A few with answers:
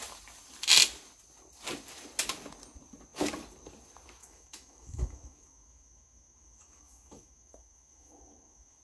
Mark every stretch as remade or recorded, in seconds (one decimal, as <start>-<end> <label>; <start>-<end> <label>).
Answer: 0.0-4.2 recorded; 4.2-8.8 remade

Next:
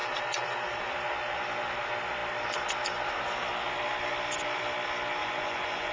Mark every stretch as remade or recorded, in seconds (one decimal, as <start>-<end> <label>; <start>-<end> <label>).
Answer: 0.0-5.2 recorded; 5.2-5.9 remade

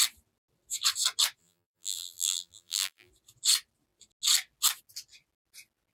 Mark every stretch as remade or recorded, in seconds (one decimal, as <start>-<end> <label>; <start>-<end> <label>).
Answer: 0.0-1.4 recorded; 1.4-3.1 remade; 3.1-5.9 recorded